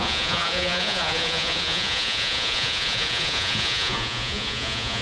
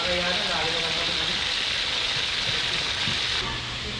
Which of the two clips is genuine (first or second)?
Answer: second